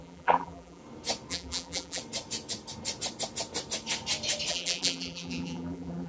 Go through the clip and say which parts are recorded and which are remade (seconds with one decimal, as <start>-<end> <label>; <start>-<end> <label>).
0.0-0.8 remade; 0.8-1.3 recorded; 1.3-2.0 remade; 2.0-4.5 recorded; 4.5-6.1 remade

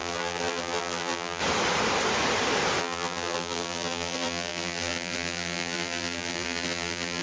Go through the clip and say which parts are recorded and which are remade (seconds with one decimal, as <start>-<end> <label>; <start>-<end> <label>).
0.0-1.4 remade; 1.4-2.8 recorded; 2.8-7.2 remade

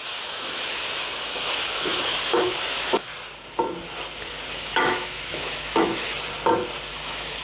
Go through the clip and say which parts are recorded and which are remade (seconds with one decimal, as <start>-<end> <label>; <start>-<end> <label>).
0.0-3.1 remade; 3.1-4.5 recorded; 4.5-6.1 remade; 6.1-6.9 recorded; 6.9-7.4 remade

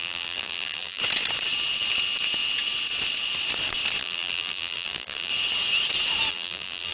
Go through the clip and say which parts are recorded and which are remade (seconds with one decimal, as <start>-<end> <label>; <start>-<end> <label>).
0.0-1.0 remade; 1.0-4.0 recorded; 4.0-5.3 remade; 5.3-6.3 recorded; 6.3-6.9 remade

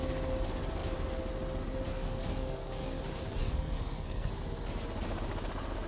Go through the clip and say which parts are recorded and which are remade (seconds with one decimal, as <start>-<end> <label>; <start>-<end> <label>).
0.0-1.9 recorded; 1.9-3.0 remade; 3.0-3.4 recorded; 3.4-4.3 remade; 4.3-5.9 recorded

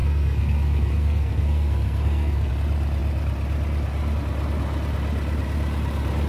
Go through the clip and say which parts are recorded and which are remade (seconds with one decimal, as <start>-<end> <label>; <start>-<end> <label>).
0.0-2.5 remade; 2.5-6.3 recorded

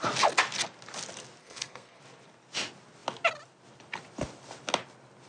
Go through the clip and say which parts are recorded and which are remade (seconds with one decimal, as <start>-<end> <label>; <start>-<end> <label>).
0.0-1.4 recorded; 1.4-2.0 remade; 2.0-5.3 recorded